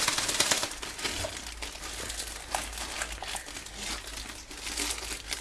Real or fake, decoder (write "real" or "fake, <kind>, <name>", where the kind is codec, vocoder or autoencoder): real